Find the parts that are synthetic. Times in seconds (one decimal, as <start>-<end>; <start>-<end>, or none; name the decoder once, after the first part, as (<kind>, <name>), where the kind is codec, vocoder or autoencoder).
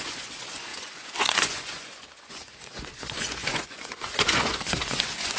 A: 0.0-5.4 (vocoder, Vocos)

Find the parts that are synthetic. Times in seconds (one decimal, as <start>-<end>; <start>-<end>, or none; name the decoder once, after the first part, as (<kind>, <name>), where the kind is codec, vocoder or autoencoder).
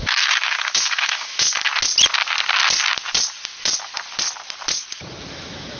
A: 0.0-1.7 (autoencoder, DAC-VAE); 5.2-5.8